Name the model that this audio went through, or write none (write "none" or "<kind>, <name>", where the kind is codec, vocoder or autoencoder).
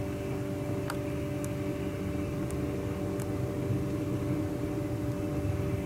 none